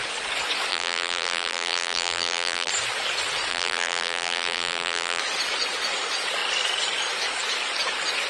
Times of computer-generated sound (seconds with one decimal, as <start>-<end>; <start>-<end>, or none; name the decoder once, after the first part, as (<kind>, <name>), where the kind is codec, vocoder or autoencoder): 0.7-2.7 (vocoder, BigVGAN v2); 3.5-5.2